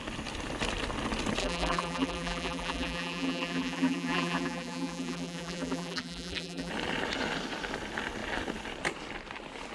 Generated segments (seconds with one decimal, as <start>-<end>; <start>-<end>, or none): 1.4-6.7